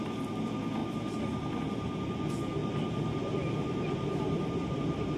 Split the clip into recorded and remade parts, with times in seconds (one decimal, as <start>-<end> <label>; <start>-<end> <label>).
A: 0.0-2.6 recorded; 2.6-5.2 remade